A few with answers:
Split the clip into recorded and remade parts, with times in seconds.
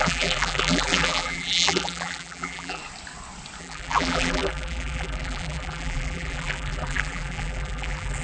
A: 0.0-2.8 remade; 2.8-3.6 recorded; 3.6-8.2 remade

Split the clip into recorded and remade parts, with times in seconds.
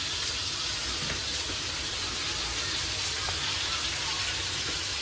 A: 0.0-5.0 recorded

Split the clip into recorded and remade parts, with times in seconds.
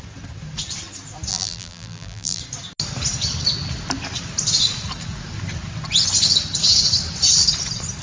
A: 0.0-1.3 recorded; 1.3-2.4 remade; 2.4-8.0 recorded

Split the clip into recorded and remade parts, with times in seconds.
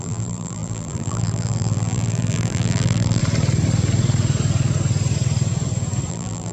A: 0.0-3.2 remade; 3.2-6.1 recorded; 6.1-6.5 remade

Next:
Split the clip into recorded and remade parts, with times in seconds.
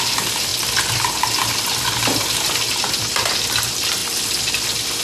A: 0.0-5.0 recorded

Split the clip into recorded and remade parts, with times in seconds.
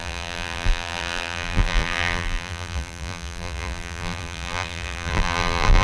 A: 0.0-5.8 remade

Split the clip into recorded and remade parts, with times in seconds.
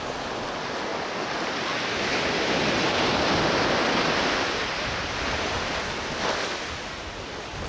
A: 0.0-7.7 recorded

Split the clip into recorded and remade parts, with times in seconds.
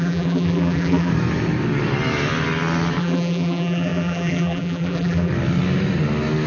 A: 0.0-1.1 remade; 1.1-3.0 recorded; 3.0-5.3 remade; 5.3-6.5 recorded